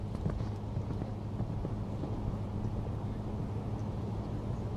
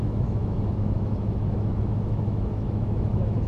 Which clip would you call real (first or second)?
first